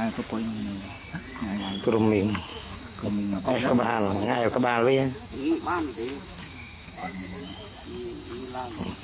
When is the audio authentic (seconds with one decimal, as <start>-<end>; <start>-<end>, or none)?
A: 0.0-2.5; 7.4-9.0